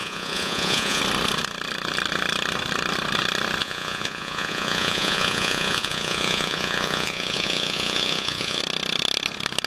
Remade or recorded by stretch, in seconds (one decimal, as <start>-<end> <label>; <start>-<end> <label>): 0.0-1.0 remade; 1.0-3.6 recorded; 3.6-8.6 remade; 8.6-9.7 recorded